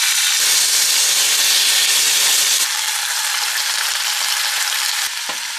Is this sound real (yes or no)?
yes